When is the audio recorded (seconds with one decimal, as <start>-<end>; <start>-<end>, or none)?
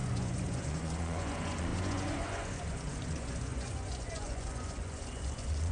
none